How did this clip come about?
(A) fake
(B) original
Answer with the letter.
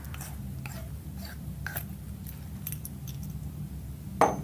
B